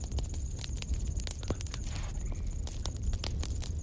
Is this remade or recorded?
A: recorded